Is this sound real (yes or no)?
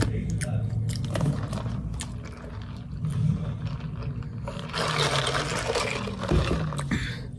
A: yes